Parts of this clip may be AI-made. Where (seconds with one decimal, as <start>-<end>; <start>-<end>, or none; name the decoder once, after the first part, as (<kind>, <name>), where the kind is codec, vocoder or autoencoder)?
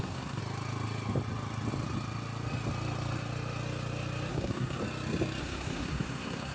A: 0.0-0.4 (codec, SNAC); 4.3-4.8; 5.4-6.5